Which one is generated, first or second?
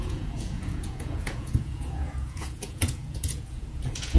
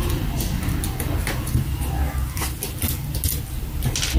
first